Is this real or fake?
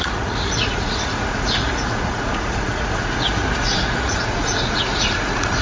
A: fake